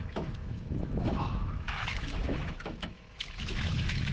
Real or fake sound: fake